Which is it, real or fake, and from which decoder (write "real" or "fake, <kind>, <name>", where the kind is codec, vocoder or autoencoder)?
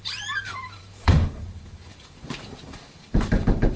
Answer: fake, vocoder, BigVGAN v2